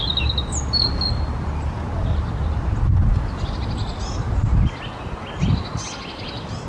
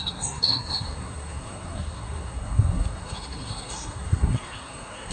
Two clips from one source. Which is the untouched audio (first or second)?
first